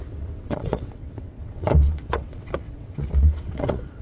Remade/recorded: remade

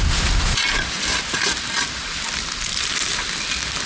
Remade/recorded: recorded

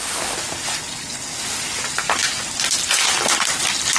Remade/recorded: recorded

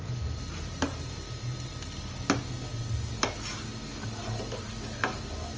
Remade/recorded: recorded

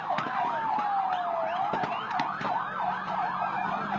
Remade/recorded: recorded